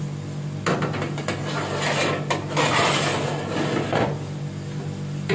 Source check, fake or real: real